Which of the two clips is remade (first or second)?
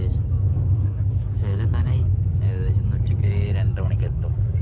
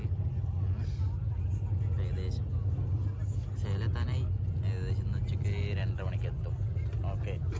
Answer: first